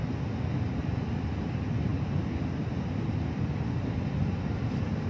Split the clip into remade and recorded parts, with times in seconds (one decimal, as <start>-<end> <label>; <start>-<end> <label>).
0.0-5.1 recorded